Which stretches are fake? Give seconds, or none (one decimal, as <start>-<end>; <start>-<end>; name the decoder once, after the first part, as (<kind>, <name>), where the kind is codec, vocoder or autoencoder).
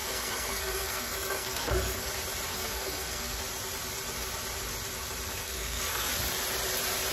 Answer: 0.0-2.1 (codec, SNAC); 2.5-3.4; 5.4-6.1